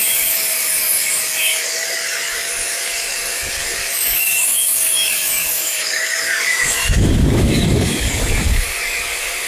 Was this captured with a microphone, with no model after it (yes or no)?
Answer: no